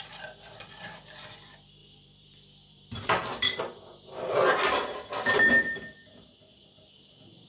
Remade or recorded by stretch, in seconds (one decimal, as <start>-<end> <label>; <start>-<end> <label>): 0.0-1.8 recorded; 1.8-5.1 remade; 5.1-7.5 recorded